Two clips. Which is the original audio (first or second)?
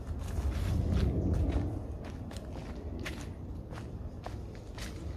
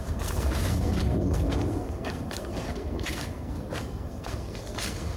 first